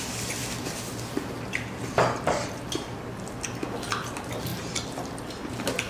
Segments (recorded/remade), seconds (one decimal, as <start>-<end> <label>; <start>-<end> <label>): 0.0-5.9 recorded